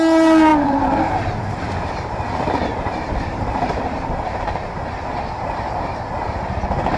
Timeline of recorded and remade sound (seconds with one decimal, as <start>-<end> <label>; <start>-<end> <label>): 0.0-0.5 recorded; 0.5-4.7 remade; 4.7-5.9 recorded; 5.9-6.6 remade; 6.6-7.0 recorded